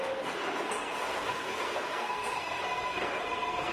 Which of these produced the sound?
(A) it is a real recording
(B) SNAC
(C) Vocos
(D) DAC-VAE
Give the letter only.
B